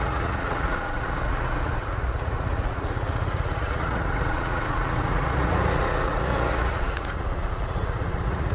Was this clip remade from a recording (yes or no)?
yes